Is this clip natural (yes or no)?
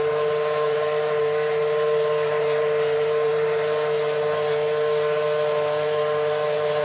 yes